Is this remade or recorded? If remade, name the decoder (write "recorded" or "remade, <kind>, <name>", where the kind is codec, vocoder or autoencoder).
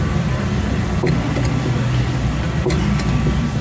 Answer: recorded